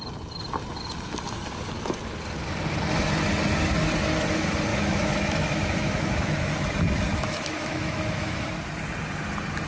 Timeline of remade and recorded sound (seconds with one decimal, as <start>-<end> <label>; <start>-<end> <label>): 0.0-4.7 recorded; 4.7-6.5 remade; 6.5-7.1 recorded; 7.1-8.5 remade; 8.5-9.7 recorded